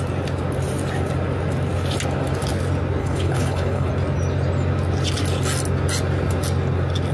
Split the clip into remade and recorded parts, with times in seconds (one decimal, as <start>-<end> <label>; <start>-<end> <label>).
0.0-3.0 recorded; 3.0-3.9 remade; 3.9-7.1 recorded